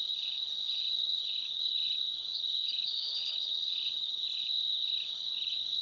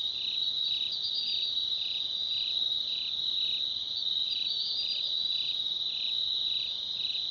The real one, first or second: second